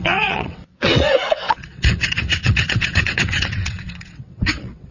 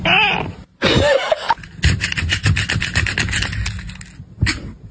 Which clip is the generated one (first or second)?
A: first